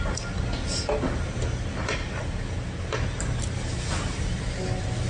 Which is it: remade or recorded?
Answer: recorded